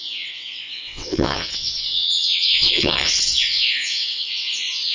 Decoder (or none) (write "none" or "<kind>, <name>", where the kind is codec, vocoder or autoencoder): vocoder, WaveNeXt